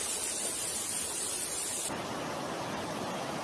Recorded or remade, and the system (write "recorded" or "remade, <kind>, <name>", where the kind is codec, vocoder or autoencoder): recorded